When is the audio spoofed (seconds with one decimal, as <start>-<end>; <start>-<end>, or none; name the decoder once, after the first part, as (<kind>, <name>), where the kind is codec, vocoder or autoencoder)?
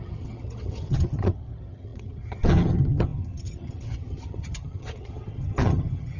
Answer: 0.0-6.2 (vocoder, HiFi-GAN)